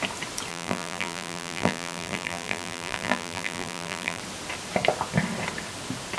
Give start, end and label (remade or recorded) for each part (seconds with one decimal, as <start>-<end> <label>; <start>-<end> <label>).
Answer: 0.0-0.5 recorded; 0.5-4.2 remade; 4.2-6.2 recorded